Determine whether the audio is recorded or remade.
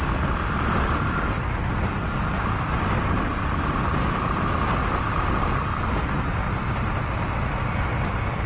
recorded